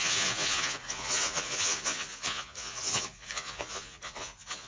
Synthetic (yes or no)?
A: yes